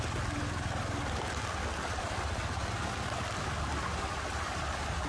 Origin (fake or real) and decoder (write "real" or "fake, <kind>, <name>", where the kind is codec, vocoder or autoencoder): real